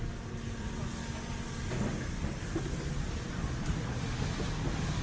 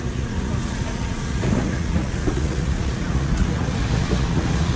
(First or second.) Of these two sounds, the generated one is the second